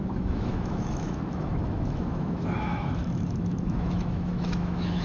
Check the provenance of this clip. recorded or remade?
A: remade